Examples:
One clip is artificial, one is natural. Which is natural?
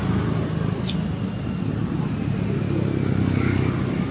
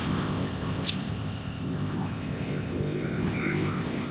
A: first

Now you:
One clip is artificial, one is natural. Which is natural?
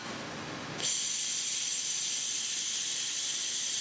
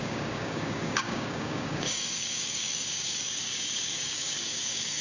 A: first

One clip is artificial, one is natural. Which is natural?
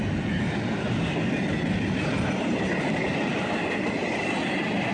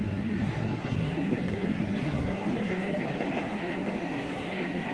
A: first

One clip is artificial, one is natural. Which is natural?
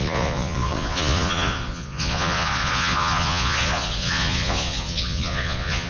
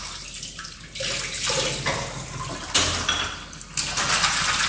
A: second